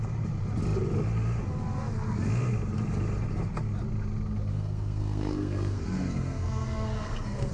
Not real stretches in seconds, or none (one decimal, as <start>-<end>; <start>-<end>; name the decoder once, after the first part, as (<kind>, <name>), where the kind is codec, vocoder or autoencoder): 4.5-7.5 (codec, SNAC)